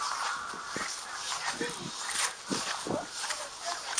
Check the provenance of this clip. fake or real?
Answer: real